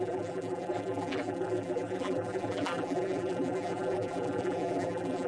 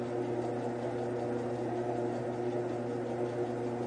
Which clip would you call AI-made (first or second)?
first